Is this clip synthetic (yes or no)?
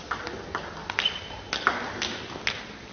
no